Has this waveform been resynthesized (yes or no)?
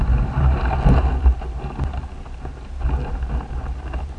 no